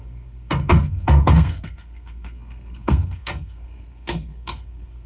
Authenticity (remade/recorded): remade